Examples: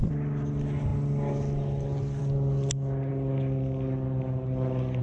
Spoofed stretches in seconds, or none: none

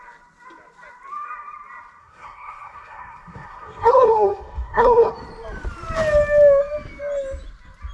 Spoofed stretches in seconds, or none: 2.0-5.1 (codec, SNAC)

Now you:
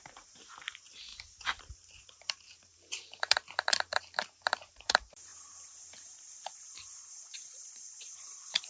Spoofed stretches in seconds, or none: 0.0-1.1 (vocoder, BigVGAN v2); 1.6-8.7

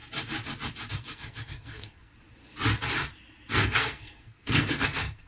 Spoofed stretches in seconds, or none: 0.9-2.1 (codec, SNAC); 3.5-5.3